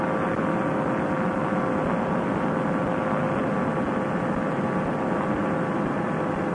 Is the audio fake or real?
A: real